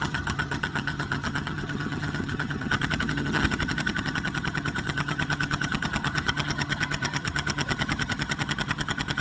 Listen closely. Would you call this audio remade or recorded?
remade